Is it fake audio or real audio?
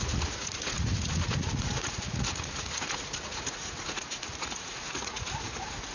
fake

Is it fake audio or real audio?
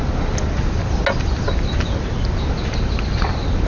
real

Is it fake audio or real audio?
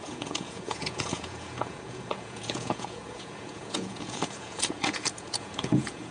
fake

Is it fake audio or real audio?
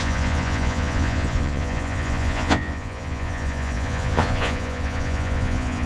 fake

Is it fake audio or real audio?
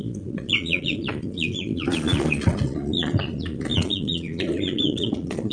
fake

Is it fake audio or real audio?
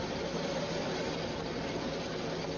real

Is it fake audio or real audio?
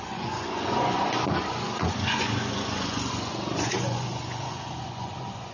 fake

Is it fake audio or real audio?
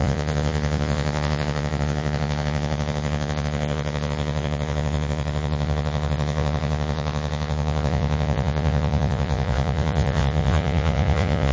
fake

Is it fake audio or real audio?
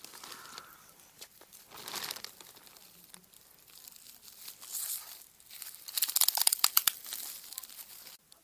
real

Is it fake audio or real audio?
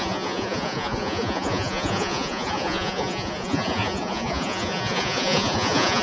fake